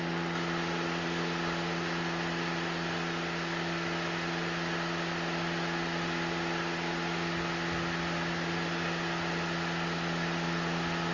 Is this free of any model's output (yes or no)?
yes